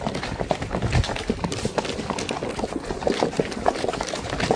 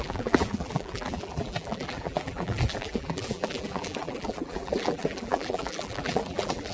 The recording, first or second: first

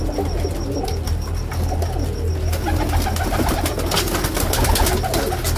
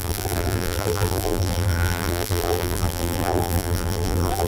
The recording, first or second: first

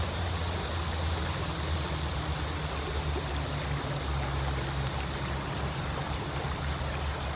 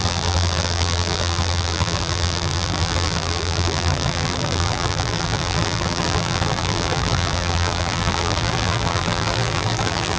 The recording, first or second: first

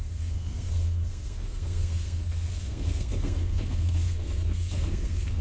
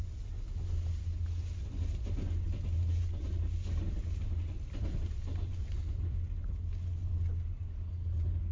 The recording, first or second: second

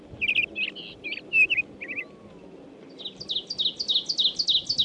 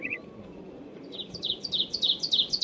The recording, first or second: first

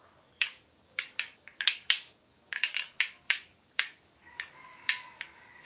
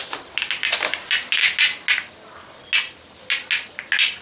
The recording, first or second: second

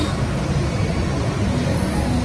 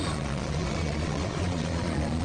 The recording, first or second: first